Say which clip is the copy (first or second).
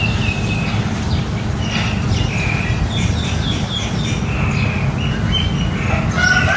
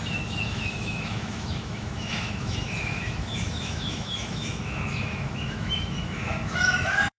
second